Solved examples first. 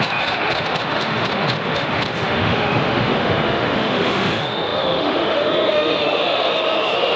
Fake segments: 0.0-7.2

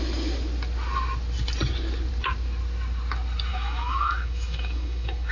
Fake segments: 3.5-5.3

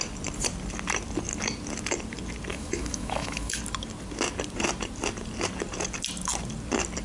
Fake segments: 2.5-3.6

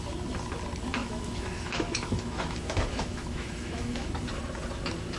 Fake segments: 1.0-4.1